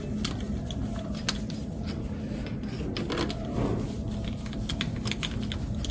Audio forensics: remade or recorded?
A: recorded